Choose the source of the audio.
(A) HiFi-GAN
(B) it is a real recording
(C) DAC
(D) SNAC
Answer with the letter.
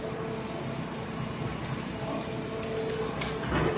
B